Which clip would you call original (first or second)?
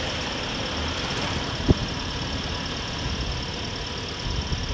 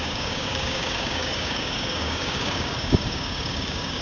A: first